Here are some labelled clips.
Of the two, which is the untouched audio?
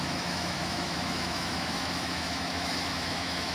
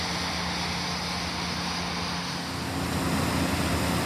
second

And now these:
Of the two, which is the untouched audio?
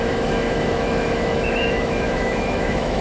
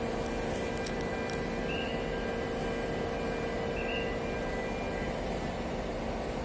second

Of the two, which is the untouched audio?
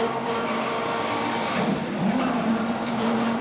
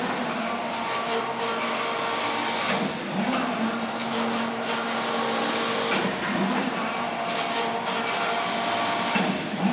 second